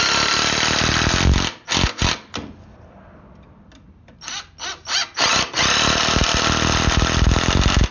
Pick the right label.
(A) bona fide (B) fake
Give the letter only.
A